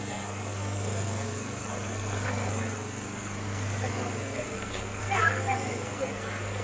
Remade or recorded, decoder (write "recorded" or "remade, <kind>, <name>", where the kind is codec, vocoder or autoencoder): remade, codec, SNAC